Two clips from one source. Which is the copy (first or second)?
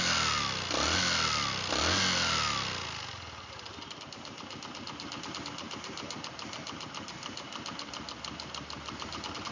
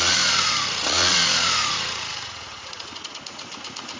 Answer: second